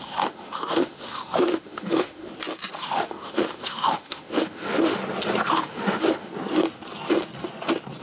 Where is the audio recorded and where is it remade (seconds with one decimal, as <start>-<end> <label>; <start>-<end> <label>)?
0.0-2.3 remade; 2.3-2.8 recorded; 2.8-5.0 remade; 5.0-5.5 recorded; 5.5-6.3 remade; 6.3-8.0 recorded